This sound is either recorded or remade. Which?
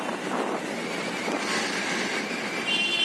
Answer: recorded